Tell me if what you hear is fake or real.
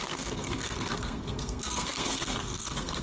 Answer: fake